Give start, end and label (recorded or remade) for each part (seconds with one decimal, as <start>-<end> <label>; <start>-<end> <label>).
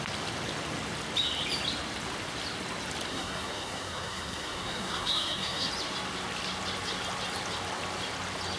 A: 0.0-3.1 recorded; 3.1-5.7 remade; 5.7-8.6 recorded